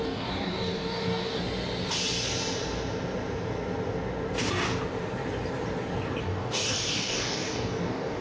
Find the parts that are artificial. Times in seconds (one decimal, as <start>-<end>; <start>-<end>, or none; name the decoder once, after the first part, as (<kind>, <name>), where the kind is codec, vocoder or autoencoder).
0.0-1.4 (codec, DAC); 6.2-8.2